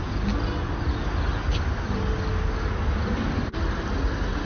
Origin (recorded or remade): recorded